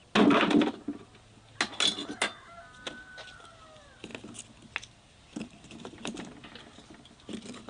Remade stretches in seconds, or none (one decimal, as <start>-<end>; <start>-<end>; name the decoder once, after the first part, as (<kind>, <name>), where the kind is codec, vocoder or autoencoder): none